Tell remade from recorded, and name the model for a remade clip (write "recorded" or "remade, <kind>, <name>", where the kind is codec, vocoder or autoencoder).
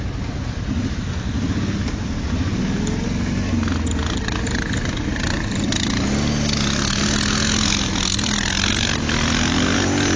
recorded